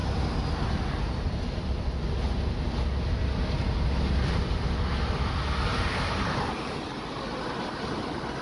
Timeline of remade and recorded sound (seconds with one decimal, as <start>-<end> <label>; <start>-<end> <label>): 0.0-5.7 recorded; 5.7-6.8 remade; 6.8-8.4 recorded